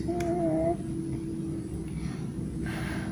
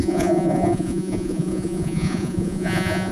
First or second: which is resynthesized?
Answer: second